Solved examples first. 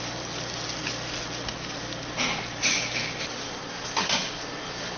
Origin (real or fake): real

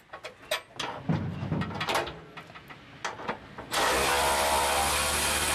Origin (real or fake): real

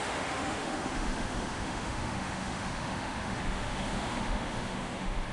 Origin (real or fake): fake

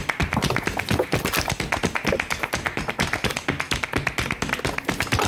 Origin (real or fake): real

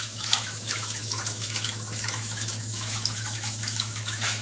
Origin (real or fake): fake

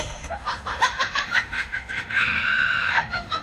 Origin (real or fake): fake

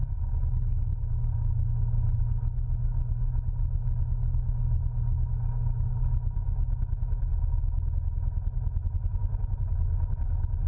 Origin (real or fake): real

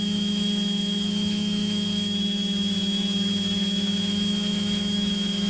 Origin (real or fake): fake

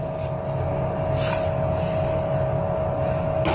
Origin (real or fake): real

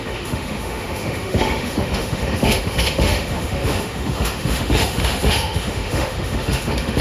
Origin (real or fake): fake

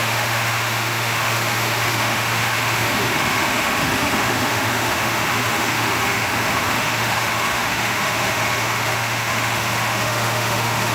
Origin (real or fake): fake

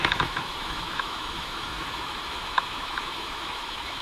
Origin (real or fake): fake